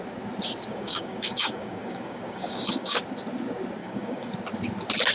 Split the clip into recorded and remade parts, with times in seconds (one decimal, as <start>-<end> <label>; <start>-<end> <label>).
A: 0.0-0.7 recorded; 0.7-3.0 remade; 3.0-3.8 recorded; 3.8-4.3 remade; 4.3-5.1 recorded